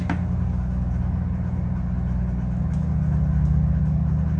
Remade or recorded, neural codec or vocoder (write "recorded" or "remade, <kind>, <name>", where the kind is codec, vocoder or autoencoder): recorded